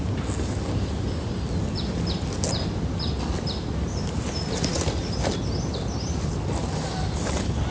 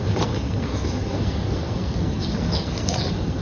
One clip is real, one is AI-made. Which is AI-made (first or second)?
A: second